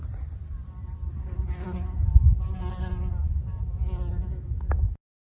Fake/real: real